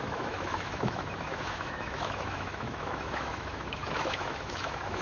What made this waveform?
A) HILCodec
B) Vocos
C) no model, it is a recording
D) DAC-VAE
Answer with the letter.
D